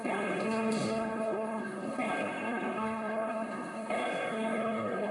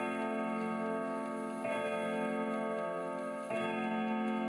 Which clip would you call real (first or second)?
second